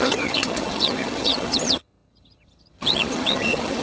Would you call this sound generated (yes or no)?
yes